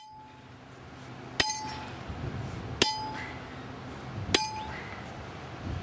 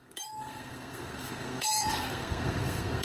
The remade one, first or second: second